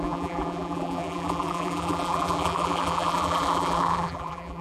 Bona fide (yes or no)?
no